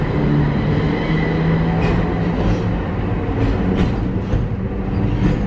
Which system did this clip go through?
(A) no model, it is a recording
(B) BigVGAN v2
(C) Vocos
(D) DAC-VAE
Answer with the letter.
A